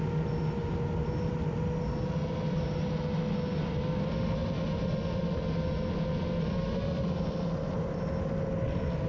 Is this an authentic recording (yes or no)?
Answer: yes